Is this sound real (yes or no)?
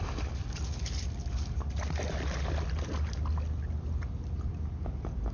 yes